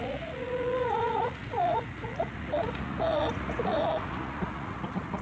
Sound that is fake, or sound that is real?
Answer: fake